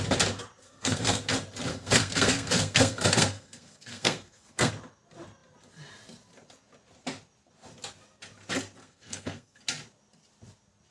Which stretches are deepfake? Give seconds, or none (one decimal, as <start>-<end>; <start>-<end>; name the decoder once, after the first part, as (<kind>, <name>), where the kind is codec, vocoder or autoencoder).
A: 0.6-1.2 (codec, SNAC); 1.7-4.7; 8.8-9.6